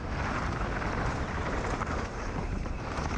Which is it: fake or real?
fake